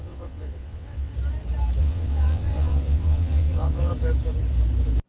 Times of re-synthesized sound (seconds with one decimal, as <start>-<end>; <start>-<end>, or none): 0.0-1.1; 1.8-3.9